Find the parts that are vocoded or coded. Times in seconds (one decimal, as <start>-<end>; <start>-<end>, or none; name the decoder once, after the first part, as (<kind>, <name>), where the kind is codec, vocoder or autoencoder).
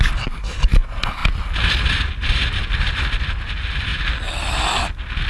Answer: none